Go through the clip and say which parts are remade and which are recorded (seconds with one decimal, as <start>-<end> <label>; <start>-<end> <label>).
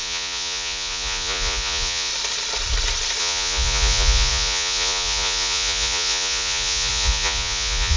0.0-2.1 remade; 2.1-3.2 recorded; 3.2-8.0 remade